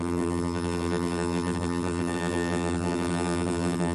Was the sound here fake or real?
fake